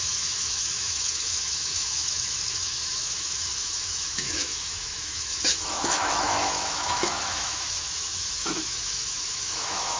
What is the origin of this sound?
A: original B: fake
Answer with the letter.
B